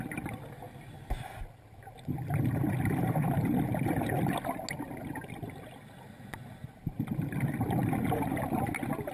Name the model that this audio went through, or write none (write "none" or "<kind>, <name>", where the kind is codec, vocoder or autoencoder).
none